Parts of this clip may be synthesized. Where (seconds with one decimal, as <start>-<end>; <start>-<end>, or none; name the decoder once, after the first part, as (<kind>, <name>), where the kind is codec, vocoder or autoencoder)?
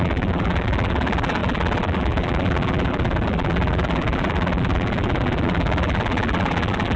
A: 0.0-7.0 (vocoder, BigVGAN v2)